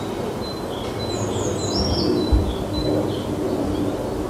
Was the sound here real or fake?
real